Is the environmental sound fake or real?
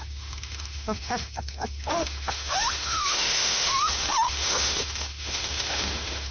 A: fake